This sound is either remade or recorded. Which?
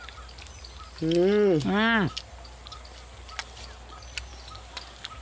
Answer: recorded